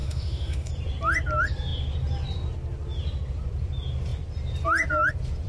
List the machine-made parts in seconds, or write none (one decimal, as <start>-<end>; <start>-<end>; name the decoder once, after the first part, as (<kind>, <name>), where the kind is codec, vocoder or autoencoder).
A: 0.0-0.7 (autoencoder, DAC-VAE)